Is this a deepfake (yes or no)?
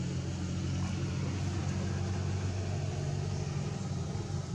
no